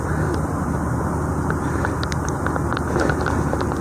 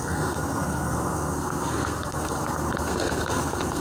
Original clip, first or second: first